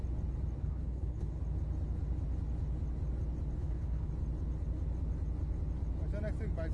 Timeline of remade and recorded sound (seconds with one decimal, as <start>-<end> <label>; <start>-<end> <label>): 0.0-0.6 recorded; 0.6-1.4 remade; 1.4-3.6 recorded; 3.6-4.1 remade; 4.1-6.7 recorded